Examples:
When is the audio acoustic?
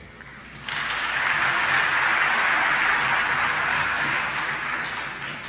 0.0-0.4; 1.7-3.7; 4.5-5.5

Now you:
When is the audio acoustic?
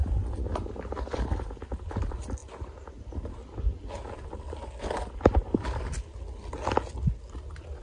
0.0-7.8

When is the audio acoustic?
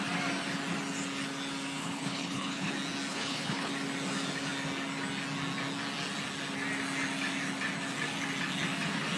0.0-1.8; 2.7-3.1; 3.7-9.2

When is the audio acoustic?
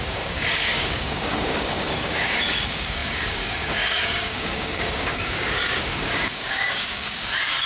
none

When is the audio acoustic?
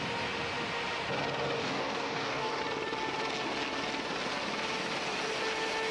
0.0-1.6; 2.6-5.9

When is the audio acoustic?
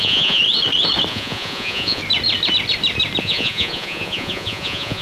0.4-1.1; 2.0-3.2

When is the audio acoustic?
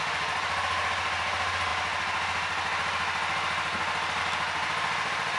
0.0-5.4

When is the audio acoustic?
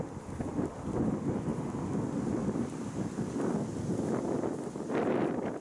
0.0-5.6